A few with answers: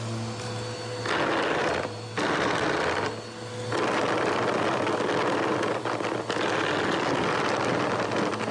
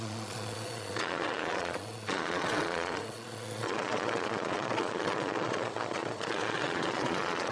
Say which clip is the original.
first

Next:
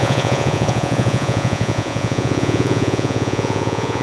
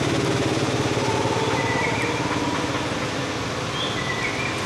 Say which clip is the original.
second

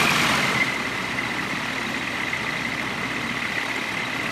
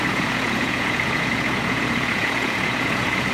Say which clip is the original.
first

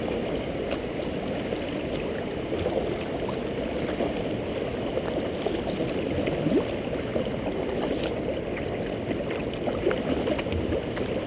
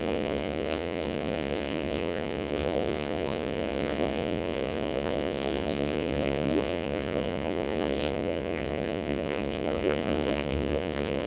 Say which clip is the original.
first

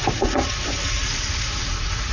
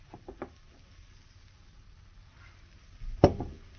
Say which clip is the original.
second